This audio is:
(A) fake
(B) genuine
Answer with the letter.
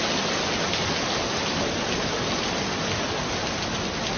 B